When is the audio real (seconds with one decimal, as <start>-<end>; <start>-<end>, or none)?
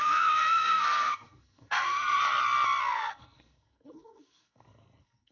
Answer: 2.2-2.8